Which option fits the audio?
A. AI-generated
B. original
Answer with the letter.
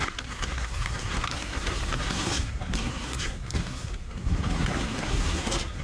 A